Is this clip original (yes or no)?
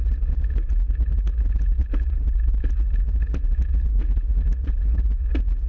no